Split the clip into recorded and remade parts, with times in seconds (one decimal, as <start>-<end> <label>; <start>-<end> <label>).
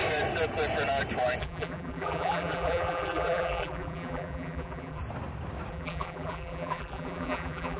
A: 0.0-1.4 recorded; 1.4-5.0 remade; 5.0-5.7 recorded; 5.7-7.8 remade